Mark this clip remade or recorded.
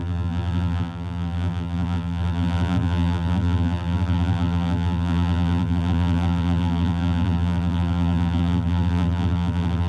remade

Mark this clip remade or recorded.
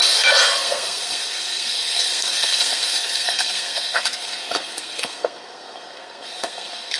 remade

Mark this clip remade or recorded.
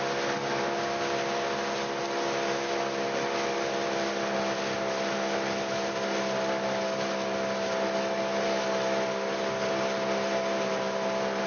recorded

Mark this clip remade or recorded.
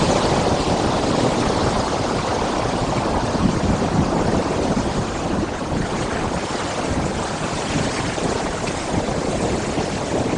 remade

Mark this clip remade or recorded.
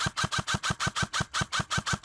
recorded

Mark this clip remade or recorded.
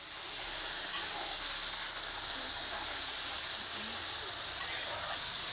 recorded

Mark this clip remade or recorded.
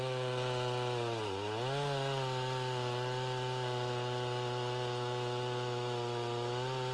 recorded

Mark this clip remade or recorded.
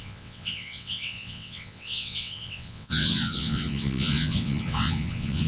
remade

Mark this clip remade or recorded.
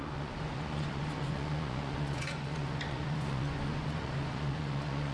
remade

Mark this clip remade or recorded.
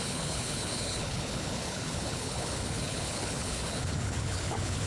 remade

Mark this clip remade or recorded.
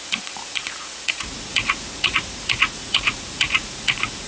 remade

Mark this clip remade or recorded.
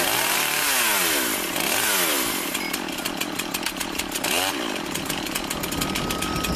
recorded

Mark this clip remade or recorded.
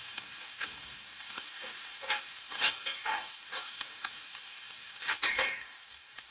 remade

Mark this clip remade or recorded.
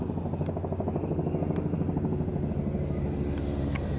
recorded